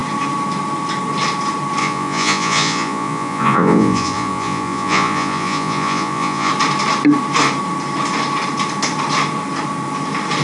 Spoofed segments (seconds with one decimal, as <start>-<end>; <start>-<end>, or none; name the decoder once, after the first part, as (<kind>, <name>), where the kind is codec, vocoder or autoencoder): 1.8-6.5 (vocoder, Vocos)